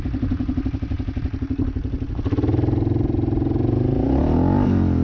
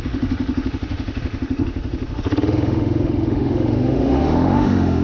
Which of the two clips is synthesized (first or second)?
second